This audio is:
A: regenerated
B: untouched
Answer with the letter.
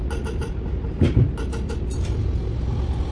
B